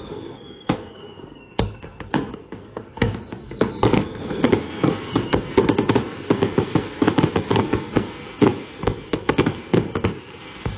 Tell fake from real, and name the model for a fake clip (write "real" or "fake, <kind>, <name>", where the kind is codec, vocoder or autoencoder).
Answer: fake, codec, SNAC